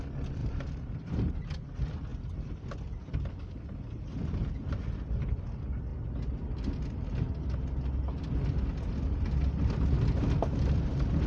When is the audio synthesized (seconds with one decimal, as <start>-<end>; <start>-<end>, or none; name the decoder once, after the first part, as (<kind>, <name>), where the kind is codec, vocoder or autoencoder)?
0.4-1.3 (vocoder, BigVGAN v2)